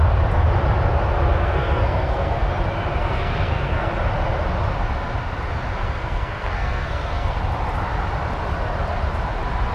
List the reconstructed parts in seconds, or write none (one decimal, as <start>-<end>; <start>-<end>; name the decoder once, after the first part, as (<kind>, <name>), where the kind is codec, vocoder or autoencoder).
1.4-2.5 (codec, SNAC); 3.0-3.9; 5.8-7.4